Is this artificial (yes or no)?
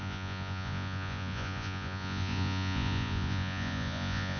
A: yes